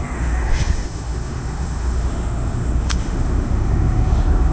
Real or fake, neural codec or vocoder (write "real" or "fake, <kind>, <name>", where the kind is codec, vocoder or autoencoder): fake, autoencoder, DAC-VAE